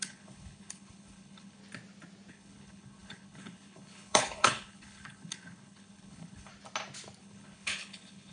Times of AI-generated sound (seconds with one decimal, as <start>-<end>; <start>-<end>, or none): 0.0-1.6; 2.3-6.5; 7.2-8.3